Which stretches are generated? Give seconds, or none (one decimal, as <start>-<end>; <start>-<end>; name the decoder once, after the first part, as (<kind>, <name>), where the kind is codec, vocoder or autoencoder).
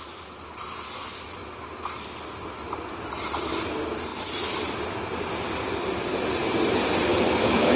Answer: none